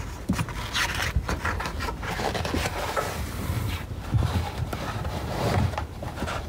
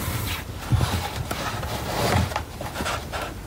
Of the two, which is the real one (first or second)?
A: second